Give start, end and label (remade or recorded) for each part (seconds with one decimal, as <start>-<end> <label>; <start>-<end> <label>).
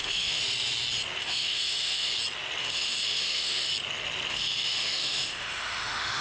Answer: 0.0-0.4 remade; 0.4-1.2 recorded; 1.2-2.1 remade; 2.1-2.6 recorded; 2.6-3.7 remade; 3.7-4.3 recorded; 4.3-6.2 remade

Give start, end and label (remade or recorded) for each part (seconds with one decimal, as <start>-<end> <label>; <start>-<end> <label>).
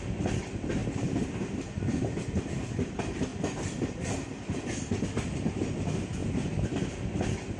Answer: 0.0-0.8 remade; 0.8-1.8 recorded; 1.8-3.3 remade; 3.3-5.2 recorded; 5.2-6.2 remade; 6.2-7.6 recorded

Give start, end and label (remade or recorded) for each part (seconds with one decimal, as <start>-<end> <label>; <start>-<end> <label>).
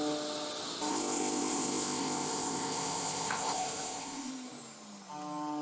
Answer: 0.0-0.9 recorded; 0.9-4.3 remade; 4.3-5.6 recorded